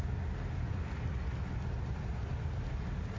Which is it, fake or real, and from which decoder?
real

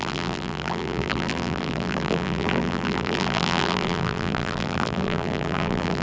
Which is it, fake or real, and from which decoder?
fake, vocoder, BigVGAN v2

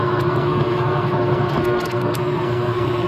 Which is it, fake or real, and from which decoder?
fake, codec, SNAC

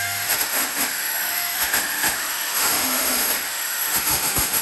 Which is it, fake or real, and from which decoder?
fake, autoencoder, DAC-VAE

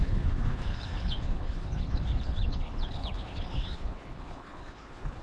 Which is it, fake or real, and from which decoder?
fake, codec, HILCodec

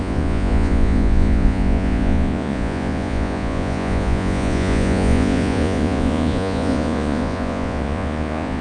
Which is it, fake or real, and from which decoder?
fake, vocoder, Vocos